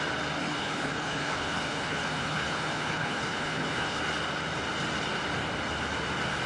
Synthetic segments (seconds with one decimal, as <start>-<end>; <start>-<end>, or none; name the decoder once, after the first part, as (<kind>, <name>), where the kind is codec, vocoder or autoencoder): 0.4-4.0 (codec, HILCodec)